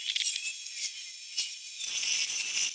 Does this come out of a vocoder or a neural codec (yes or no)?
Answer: no